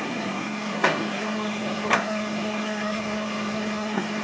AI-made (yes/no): yes